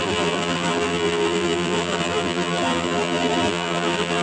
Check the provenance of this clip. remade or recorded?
remade